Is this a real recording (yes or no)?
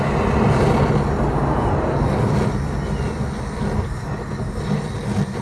yes